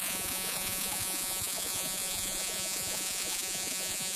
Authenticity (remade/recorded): remade